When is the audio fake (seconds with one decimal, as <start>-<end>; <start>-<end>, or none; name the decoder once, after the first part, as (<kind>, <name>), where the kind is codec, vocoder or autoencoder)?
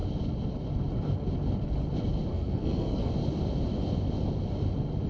2.3-3.1 (codec, SNAC)